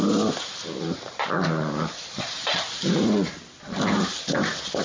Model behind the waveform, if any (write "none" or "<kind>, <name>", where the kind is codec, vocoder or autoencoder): none